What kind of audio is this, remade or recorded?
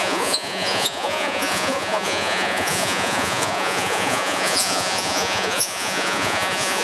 remade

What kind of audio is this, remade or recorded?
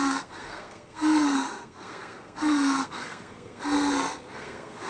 remade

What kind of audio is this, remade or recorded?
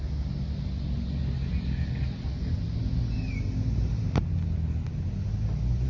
recorded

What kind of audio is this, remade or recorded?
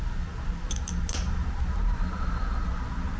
recorded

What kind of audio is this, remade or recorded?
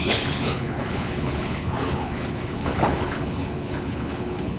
remade